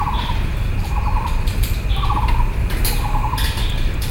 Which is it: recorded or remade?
recorded